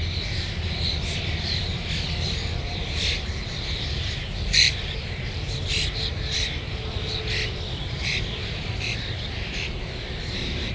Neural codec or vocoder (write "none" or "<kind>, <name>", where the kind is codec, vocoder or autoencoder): none